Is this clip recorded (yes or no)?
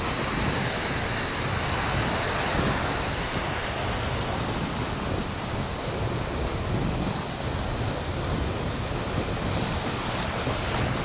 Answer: yes